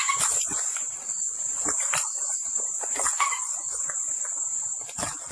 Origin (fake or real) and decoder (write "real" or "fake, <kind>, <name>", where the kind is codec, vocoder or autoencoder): real